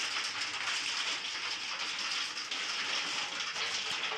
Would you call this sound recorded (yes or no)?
yes